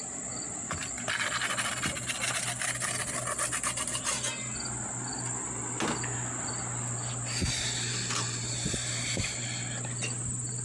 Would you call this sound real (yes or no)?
yes